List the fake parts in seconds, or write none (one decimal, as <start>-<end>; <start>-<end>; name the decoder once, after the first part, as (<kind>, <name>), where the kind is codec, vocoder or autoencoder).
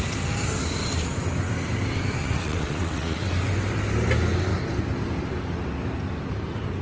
2.2-3.3 (vocoder, WaveNeXt)